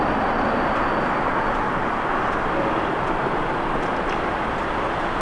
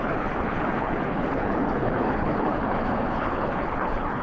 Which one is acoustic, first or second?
first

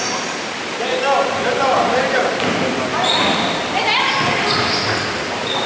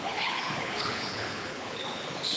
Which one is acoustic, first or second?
first